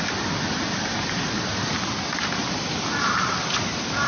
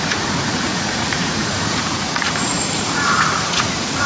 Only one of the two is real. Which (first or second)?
first